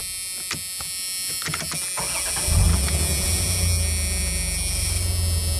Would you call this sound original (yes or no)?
yes